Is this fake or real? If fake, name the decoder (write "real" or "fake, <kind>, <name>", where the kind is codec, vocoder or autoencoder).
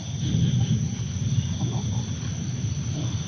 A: real